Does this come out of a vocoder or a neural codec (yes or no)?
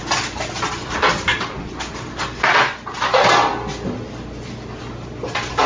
no